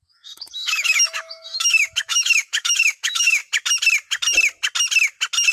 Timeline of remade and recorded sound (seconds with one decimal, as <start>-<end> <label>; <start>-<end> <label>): 0.0-3.4 remade; 3.4-5.5 recorded